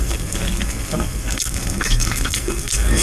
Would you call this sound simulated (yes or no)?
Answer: yes